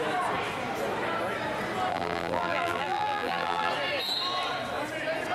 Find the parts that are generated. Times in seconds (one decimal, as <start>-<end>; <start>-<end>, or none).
1.9-3.7

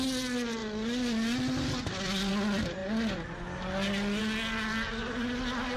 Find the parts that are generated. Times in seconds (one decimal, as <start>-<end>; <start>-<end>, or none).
none

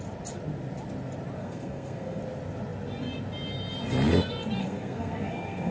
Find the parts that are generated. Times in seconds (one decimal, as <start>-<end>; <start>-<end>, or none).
1.4-2.2; 4.6-5.7

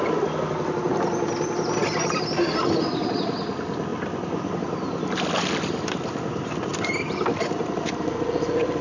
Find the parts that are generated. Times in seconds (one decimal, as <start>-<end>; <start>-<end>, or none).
none

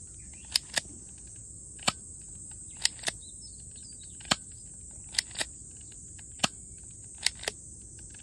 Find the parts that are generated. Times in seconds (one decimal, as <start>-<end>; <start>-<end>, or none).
none